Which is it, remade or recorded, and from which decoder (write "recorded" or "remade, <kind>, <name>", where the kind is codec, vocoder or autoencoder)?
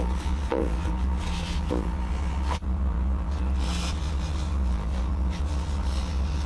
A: remade, vocoder, Vocos